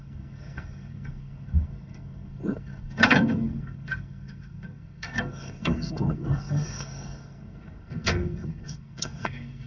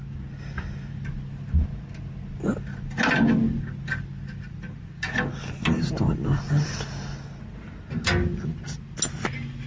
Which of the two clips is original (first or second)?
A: second